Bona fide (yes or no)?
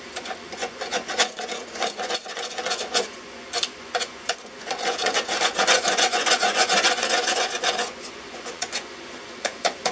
no